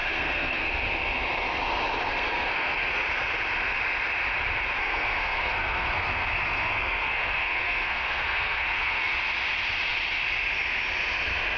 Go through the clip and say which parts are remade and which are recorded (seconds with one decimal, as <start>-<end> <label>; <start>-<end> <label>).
0.0-0.7 remade; 0.7-2.1 recorded; 2.1-3.0 remade; 3.0-4.8 recorded; 4.8-9.1 remade; 9.1-11.6 recorded